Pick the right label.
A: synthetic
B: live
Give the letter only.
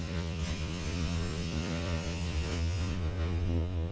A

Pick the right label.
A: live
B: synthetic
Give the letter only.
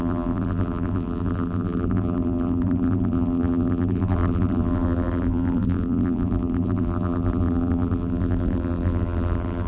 B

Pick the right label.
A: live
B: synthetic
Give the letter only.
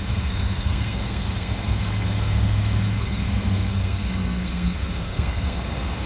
B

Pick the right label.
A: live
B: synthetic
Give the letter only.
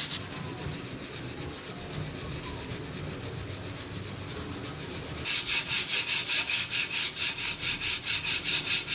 A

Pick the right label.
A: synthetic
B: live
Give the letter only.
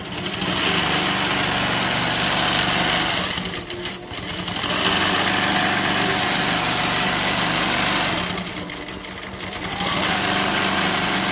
B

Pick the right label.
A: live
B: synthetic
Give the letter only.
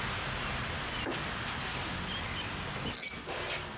A